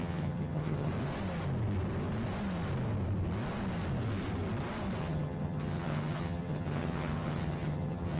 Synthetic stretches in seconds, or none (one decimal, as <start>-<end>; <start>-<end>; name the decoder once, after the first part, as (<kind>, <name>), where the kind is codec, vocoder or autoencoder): 0.0-0.9 (vocoder, HiFi-GAN); 5.0-8.2